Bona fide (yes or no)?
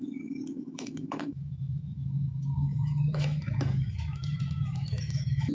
no